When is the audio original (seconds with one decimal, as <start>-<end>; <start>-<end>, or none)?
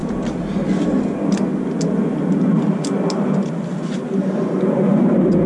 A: 0.0-5.5